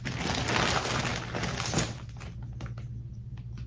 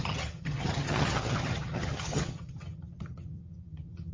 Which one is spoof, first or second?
second